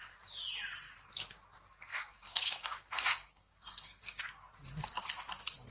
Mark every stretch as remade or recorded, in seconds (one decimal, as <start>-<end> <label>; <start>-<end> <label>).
0.0-1.9 recorded; 1.9-4.2 remade; 4.2-5.7 recorded